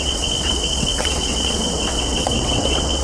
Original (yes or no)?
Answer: no